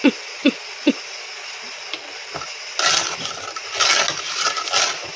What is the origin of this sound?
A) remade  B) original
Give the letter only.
B